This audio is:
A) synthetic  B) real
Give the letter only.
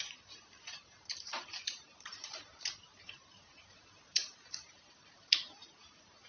A